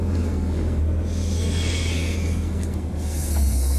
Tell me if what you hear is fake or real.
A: fake